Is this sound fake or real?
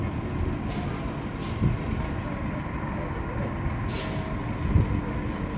real